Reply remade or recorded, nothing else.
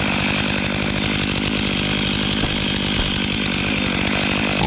recorded